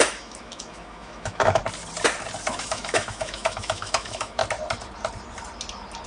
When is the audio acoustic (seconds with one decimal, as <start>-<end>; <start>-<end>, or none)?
1.6-2.5; 4.4-6.1